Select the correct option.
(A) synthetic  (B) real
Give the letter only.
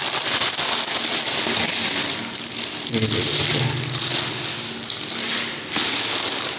B